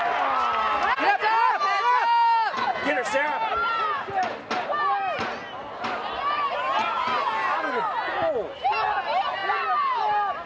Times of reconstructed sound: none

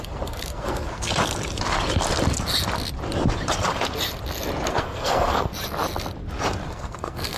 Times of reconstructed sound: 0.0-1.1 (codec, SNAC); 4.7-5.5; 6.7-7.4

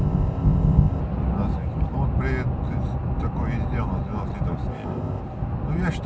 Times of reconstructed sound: 0.0-1.0 (codec, ZipCodec); 4.7-5.2

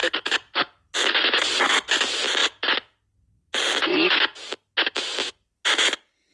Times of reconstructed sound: none

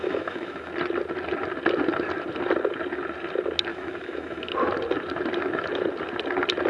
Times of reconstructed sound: 0.0-0.7 (autoencoder, DAC-VAE); 3.7-4.5

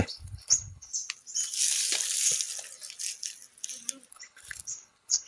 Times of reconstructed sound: 0.0-0.9 (codec, HILCodec); 4.1-5.3

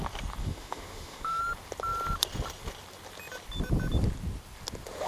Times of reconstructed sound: 0.4-1.4 (autoencoder, DAC-VAE)

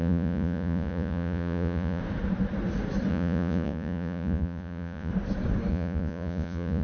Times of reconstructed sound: 0.0-2.0 (vocoder, Vocos); 3.1-5.1; 5.7-6.8